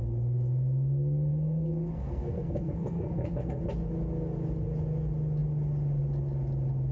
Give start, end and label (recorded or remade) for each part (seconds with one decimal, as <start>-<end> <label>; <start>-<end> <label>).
0.0-1.3 recorded; 1.3-3.6 remade; 3.6-6.9 recorded